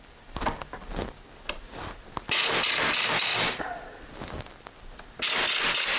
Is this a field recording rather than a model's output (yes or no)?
yes